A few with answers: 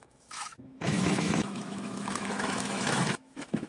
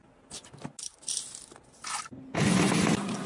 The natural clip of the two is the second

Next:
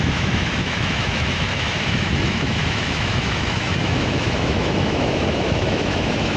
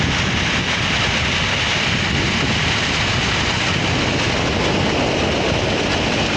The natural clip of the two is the second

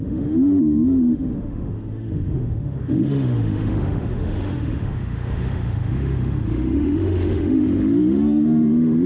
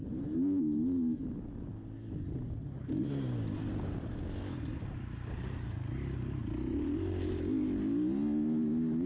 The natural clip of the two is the second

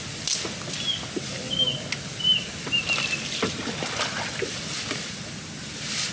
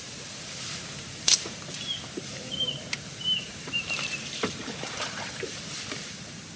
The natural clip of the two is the first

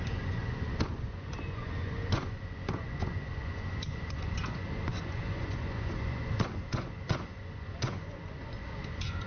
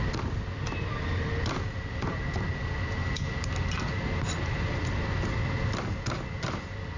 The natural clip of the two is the second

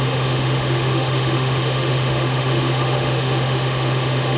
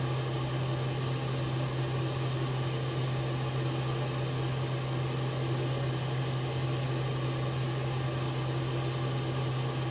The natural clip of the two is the second